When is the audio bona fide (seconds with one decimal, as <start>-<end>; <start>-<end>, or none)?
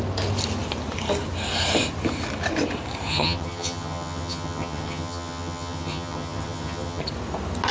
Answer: 0.0-3.1; 7.0-7.7